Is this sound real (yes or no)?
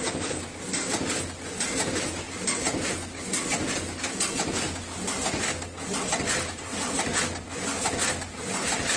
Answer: yes